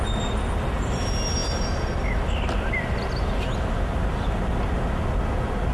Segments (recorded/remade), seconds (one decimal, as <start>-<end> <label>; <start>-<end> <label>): 0.0-5.7 recorded